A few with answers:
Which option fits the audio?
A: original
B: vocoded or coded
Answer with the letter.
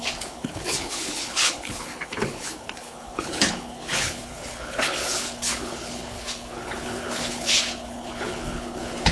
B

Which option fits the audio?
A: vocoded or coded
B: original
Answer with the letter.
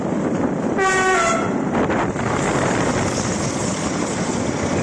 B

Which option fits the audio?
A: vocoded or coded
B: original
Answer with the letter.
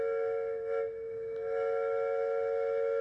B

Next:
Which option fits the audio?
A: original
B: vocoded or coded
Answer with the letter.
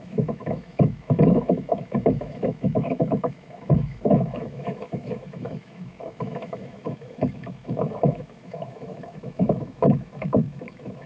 B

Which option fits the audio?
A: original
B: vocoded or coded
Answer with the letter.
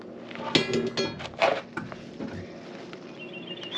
A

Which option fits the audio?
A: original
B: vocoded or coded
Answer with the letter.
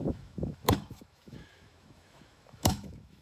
B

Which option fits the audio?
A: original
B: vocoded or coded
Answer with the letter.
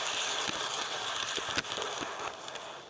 A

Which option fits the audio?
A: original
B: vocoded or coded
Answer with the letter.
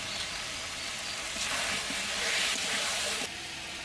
A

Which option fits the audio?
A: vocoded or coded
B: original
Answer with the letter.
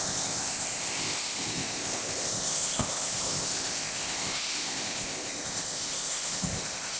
A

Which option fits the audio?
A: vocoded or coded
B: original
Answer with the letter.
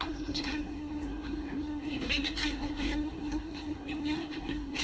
A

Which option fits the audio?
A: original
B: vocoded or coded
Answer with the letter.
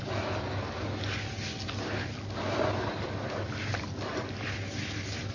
A